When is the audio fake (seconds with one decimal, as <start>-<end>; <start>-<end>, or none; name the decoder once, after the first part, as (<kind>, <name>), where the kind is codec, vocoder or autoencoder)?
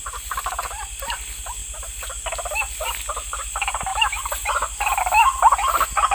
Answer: 3.9-5.0 (vocoder, BigVGAN v2)